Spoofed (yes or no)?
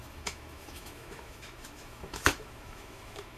yes